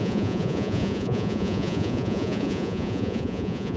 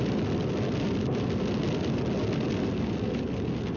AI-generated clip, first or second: first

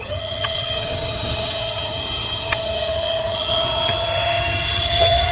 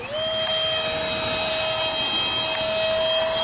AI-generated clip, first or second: first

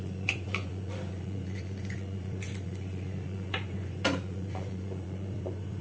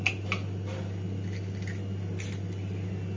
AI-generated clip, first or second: first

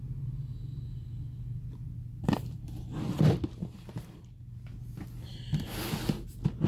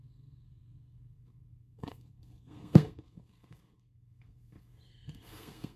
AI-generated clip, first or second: second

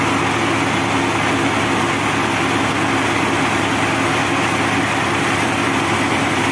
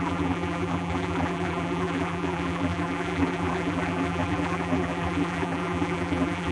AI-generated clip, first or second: second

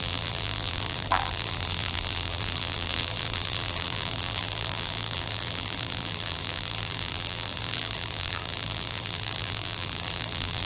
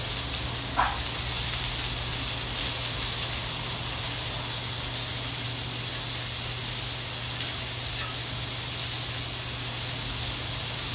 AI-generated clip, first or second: first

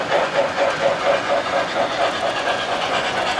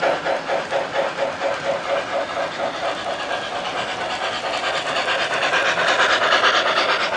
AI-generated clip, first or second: first